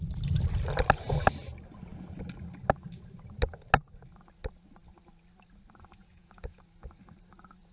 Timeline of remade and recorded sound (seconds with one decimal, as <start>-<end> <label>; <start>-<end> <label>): 0.0-6.0 recorded; 6.0-6.6 remade; 6.6-7.7 recorded